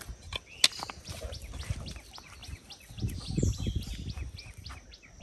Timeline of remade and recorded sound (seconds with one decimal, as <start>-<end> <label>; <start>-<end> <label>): 0.0-5.2 recorded